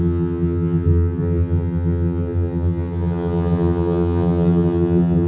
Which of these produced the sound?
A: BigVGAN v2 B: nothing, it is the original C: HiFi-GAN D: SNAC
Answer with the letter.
C